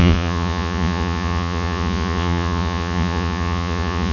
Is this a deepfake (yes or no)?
yes